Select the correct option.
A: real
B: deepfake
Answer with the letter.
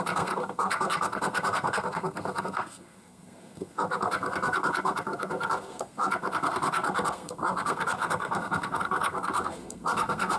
B